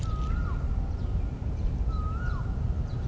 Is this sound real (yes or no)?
yes